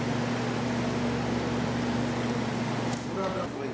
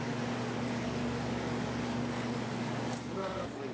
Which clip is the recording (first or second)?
first